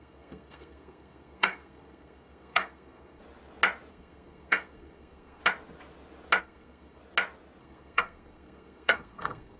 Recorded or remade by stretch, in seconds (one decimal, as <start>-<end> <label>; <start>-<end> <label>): 0.0-3.2 remade; 3.2-3.9 recorded; 3.9-5.4 remade; 5.4-6.4 recorded; 6.4-7.0 remade; 7.0-7.6 recorded; 7.6-9.6 remade